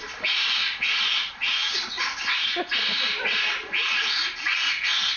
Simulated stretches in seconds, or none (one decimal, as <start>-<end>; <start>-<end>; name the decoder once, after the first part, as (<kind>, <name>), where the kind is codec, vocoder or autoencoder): 0.6-1.9 (vocoder, Vocos); 3.6-4.2